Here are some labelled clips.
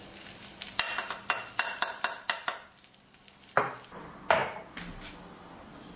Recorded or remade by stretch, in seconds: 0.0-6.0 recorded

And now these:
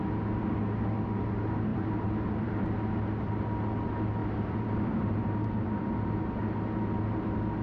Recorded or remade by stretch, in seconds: 0.0-1.7 recorded; 1.7-2.6 remade; 2.6-4.2 recorded; 4.2-5.3 remade; 5.3-7.6 recorded